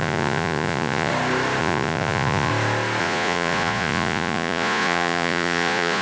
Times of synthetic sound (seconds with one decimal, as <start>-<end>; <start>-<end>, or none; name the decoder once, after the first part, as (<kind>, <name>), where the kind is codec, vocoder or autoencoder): 0.0-1.1 (vocoder, Vocos); 1.6-2.5; 3.0-6.0